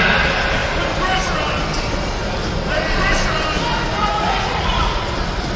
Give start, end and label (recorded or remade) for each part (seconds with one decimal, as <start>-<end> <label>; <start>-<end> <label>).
0.0-3.7 recorded; 3.7-5.0 remade; 5.0-5.6 recorded